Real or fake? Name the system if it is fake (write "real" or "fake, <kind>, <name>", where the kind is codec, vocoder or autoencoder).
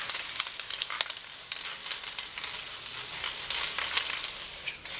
real